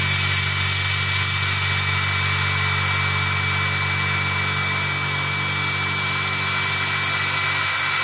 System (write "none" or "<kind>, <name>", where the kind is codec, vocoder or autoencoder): none